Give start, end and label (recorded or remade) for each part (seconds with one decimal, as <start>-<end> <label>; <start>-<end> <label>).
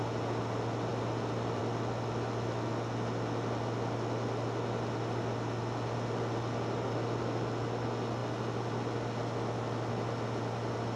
0.0-11.0 recorded